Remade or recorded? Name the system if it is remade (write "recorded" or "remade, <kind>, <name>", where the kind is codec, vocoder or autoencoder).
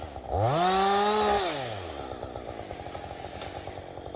recorded